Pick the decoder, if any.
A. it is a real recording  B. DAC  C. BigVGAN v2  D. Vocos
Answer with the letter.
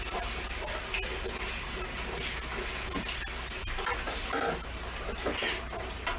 A